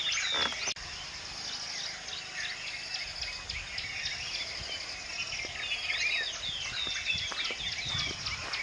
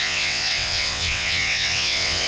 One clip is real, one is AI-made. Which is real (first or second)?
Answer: first